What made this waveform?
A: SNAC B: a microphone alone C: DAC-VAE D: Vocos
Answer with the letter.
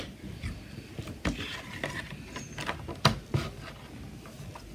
B